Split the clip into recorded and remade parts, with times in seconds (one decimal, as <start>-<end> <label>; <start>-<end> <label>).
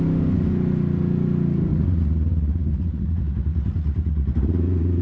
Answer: 0.0-1.7 recorded; 1.7-5.0 remade